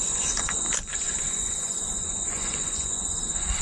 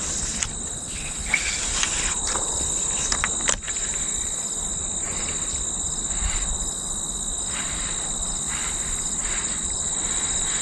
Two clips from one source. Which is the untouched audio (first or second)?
second